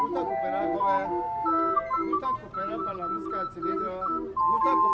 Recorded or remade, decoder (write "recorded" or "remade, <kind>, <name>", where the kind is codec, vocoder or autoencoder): remade, vocoder, BigVGAN v2